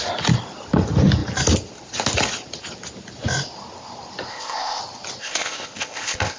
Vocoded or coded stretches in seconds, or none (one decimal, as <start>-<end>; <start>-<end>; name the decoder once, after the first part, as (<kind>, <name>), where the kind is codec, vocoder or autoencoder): 4.3-4.8 (codec, ZipCodec); 5.2-6.4